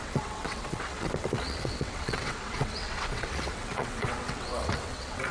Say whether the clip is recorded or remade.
remade